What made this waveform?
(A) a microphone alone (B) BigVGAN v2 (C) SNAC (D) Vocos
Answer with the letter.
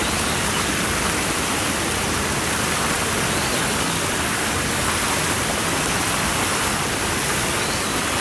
A